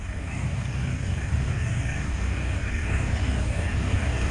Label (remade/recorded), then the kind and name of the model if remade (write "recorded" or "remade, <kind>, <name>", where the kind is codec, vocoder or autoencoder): remade, codec, DAC